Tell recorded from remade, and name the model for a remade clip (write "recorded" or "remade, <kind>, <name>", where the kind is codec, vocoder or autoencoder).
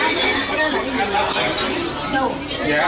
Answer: recorded